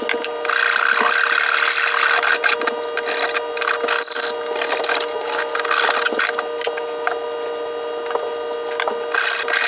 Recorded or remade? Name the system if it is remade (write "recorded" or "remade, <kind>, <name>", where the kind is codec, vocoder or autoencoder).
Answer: recorded